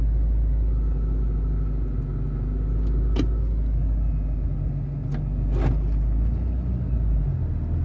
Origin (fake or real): real